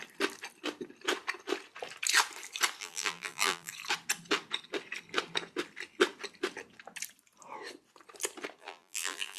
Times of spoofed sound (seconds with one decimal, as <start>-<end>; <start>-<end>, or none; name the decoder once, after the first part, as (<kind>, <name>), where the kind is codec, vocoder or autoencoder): 2.8-3.7 (vocoder, BigVGAN v2); 8.6-9.4